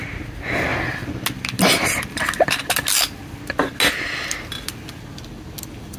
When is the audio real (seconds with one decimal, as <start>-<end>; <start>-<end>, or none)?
0.0-6.0

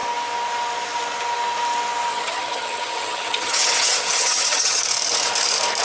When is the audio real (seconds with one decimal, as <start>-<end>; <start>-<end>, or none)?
0.0-2.1; 4.8-5.8

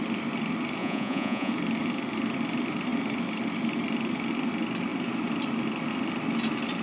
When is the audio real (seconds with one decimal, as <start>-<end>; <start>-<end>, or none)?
0.0-0.8; 1.5-6.8

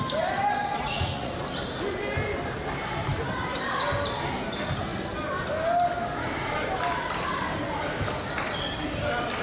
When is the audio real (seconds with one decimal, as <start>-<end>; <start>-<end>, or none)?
0.0-0.7; 1.3-9.4

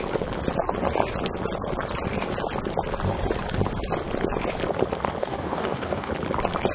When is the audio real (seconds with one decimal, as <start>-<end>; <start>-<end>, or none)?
0.0-5.2; 6.1-6.7

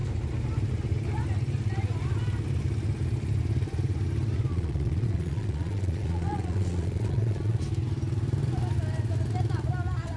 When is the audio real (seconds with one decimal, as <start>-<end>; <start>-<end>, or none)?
0.0-4.5; 7.6-10.2

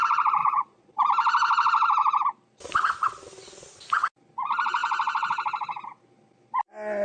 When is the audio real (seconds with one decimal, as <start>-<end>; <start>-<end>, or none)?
0.0-0.4; 1.0-7.0